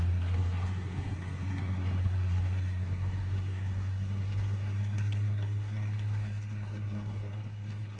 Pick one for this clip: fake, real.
fake